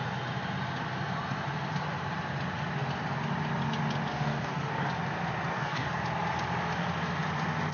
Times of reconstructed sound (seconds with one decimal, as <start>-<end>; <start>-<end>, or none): 4.1-4.9; 5.5-6.0